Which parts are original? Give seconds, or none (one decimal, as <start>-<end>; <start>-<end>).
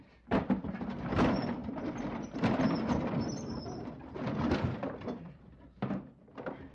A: 0.0-1.6; 2.7-4.8; 6.1-6.7